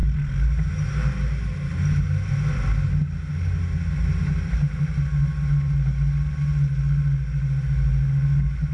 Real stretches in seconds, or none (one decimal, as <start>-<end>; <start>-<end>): 0.0-8.7